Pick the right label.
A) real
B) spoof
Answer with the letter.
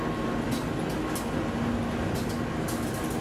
A